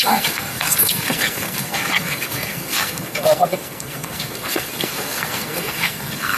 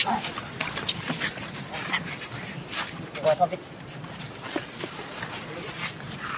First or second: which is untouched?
second